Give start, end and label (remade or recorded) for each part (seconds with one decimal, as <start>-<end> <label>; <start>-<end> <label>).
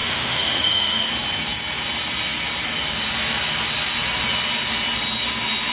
0.0-1.1 remade; 1.1-5.7 recorded